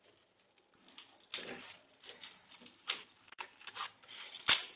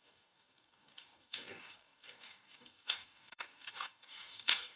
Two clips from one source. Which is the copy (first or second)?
second